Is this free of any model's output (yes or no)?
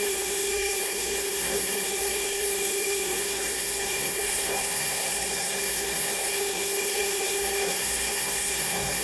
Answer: no